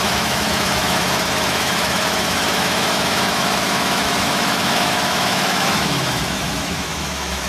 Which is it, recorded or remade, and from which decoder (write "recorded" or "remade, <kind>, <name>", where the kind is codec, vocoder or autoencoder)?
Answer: remade, autoencoder, DAC-VAE